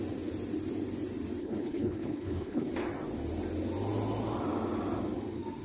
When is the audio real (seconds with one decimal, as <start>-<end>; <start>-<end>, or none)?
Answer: 0.0-1.4; 2.7-5.6